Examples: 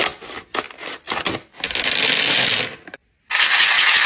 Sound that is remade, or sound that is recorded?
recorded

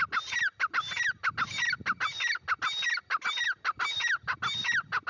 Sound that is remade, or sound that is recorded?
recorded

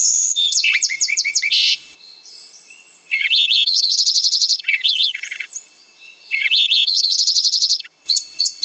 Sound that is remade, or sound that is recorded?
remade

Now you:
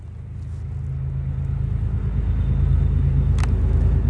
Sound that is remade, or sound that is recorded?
recorded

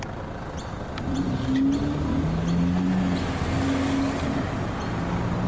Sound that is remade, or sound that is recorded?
recorded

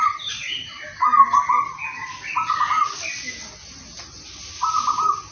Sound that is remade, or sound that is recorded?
recorded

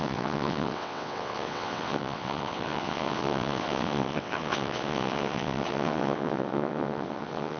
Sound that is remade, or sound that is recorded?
remade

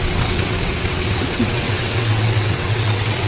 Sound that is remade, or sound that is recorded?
remade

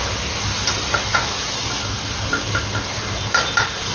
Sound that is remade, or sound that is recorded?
recorded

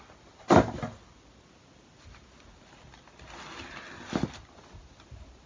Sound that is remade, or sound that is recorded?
recorded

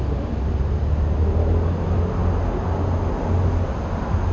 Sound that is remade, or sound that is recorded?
recorded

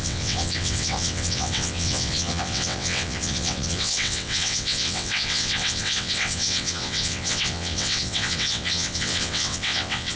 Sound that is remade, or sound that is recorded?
remade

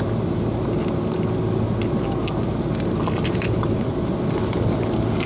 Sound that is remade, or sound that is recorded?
recorded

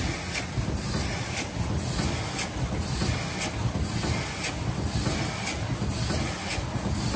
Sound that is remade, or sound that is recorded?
recorded